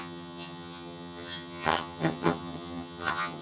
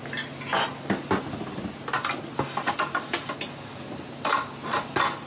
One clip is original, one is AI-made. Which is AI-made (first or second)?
first